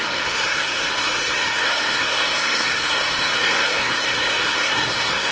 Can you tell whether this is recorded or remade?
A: remade